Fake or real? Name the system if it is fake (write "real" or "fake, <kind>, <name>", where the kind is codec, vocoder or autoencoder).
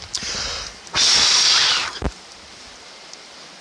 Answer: real